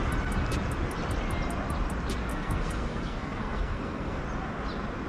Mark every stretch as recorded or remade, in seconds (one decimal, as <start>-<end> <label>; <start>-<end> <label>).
0.0-2.3 recorded; 2.3-4.2 remade; 4.2-5.1 recorded